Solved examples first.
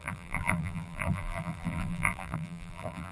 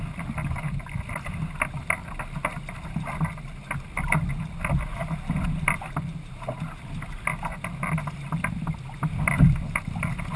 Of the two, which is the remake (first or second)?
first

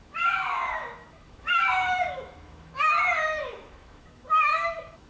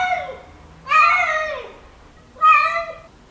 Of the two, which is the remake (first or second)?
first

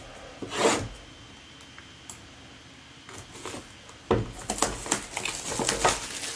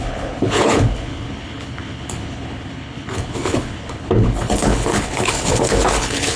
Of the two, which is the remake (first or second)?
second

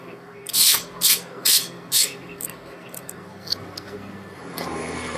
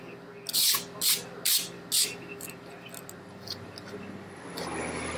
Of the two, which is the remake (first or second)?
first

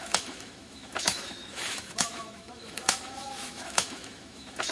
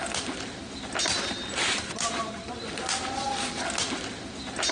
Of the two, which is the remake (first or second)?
first